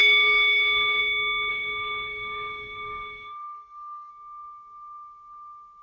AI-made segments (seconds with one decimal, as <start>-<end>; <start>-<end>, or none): 0.0-1.0; 1.5-4.1

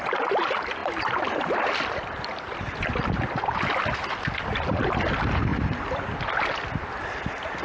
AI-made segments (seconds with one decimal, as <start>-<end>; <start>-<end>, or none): 0.8-2.6

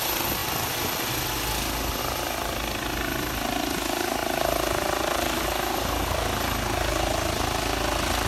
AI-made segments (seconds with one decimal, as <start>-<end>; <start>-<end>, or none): none

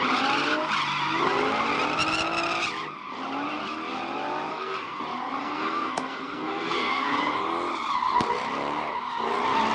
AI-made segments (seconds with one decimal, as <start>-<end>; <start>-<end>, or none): 4.5-5.0; 5.4-7.2